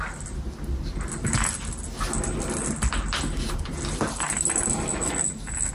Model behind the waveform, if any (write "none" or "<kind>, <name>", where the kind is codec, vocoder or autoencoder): none